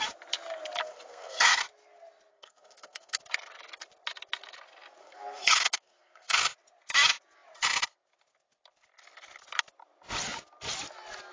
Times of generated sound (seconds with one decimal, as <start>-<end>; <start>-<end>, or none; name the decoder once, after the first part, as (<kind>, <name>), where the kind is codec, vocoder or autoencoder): 0.8-1.6 (codec, SNAC); 2.3-3.2; 5.0-6.4